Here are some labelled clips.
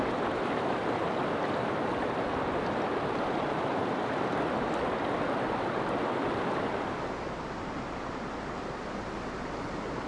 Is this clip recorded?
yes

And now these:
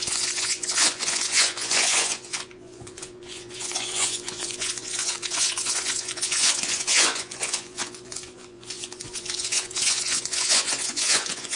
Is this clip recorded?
no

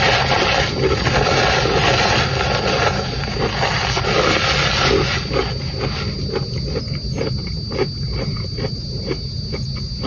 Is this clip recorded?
yes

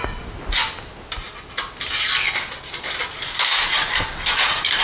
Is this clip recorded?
yes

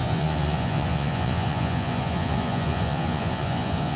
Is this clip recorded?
no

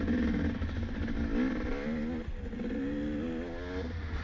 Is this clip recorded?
yes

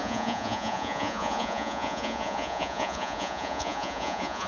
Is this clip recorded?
no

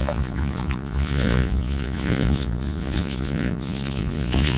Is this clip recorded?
no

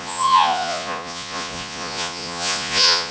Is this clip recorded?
no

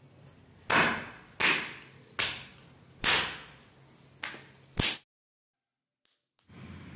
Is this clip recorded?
yes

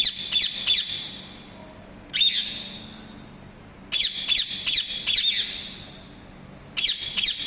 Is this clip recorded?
yes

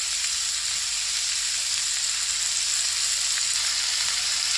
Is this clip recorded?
yes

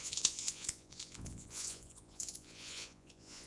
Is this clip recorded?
no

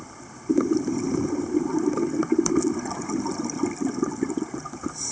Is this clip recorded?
yes